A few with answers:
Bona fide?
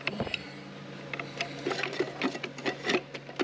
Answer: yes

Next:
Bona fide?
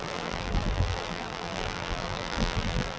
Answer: no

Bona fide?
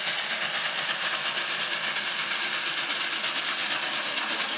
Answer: yes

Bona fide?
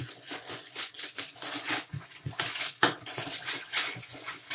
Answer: no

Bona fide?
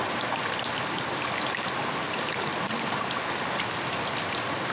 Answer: yes